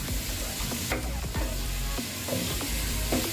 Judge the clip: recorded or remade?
recorded